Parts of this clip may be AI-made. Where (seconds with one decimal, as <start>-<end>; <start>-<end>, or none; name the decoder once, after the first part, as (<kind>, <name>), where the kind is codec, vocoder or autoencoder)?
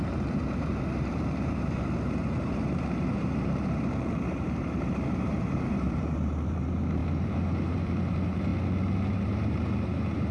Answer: 0.0-8.5 (vocoder, BigVGAN v2); 9.1-10.3